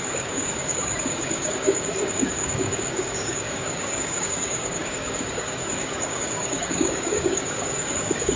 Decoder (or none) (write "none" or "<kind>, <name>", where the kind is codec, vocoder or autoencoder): codec, DAC